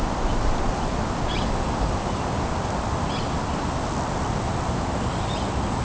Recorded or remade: recorded